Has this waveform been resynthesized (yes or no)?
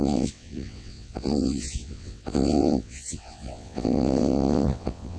yes